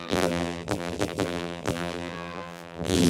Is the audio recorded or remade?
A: remade